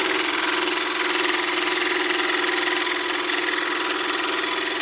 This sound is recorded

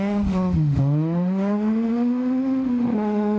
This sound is remade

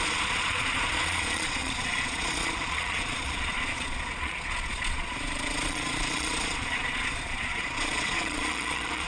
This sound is remade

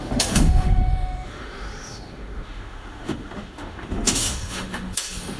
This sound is remade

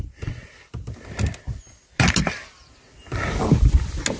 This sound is recorded